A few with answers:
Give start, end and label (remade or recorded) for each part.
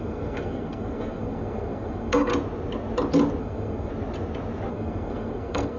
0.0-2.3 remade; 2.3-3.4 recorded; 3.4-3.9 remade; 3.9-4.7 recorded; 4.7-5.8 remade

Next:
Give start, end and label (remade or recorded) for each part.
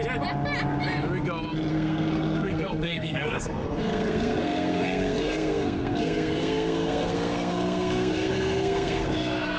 0.0-1.7 recorded; 1.7-9.6 remade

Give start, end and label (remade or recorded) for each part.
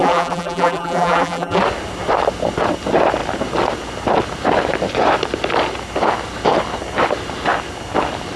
0.0-1.6 remade; 1.6-8.4 recorded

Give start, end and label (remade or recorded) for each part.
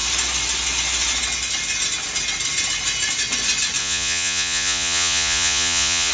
0.0-3.8 recorded; 3.8-6.1 remade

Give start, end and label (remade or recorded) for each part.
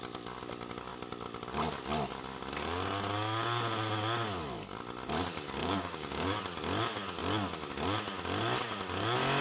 0.0-5.6 recorded; 5.6-6.4 remade; 6.4-9.4 recorded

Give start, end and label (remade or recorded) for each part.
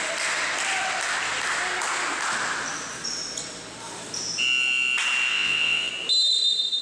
0.0-5.3 recorded; 5.3-5.9 remade; 5.9-6.8 recorded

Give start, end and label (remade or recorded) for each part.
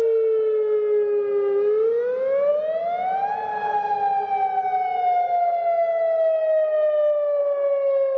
0.0-8.2 recorded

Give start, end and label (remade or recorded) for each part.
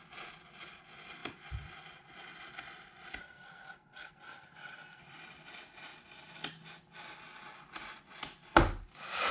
0.0-3.2 recorded; 3.2-5.0 remade; 5.0-9.3 recorded